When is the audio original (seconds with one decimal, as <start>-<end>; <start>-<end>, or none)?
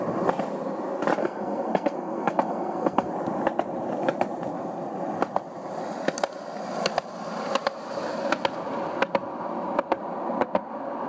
0.0-1.2; 3.1-11.1